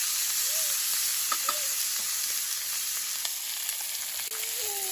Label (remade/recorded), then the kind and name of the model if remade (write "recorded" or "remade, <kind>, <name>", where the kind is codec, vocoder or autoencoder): recorded